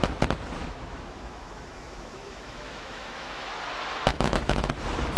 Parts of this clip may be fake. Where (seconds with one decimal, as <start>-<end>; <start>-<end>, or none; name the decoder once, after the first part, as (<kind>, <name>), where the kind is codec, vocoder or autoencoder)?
0.6-3.5 (autoencoder, DAC-VAE); 4.1-4.7